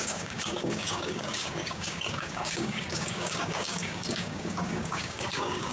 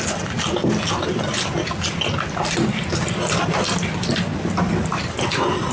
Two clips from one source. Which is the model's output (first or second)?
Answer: first